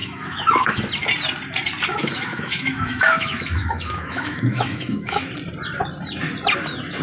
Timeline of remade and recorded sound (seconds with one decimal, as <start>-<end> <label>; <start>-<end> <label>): 0.0-0.8 remade; 0.8-1.9 recorded; 1.9-5.3 remade; 5.3-7.0 recorded